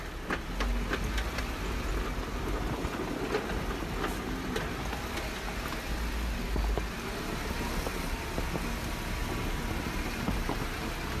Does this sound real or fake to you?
real